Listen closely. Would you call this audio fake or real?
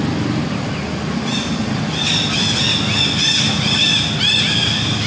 real